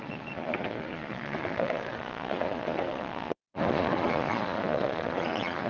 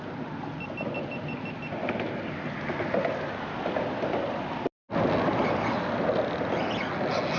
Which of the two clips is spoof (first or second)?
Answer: first